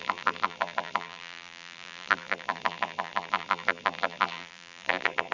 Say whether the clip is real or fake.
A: fake